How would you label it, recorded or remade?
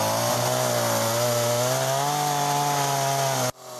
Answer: recorded